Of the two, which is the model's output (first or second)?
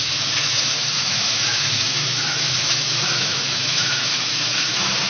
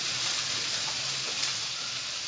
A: first